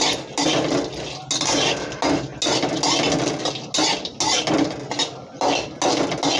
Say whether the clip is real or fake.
real